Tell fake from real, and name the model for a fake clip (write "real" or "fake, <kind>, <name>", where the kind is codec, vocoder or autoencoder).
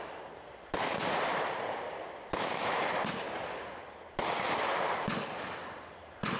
fake, vocoder, BigVGAN v2